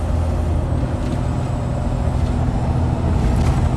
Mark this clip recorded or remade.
recorded